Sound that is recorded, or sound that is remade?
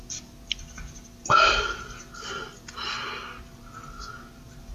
recorded